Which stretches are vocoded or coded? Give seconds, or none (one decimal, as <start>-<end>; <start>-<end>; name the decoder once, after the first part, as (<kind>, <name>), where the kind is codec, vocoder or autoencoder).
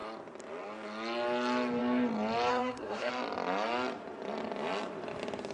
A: 2.5-3.1 (codec, SNAC)